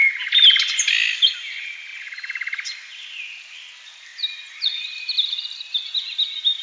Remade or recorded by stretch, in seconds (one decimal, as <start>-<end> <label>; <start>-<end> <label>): 0.0-6.6 recorded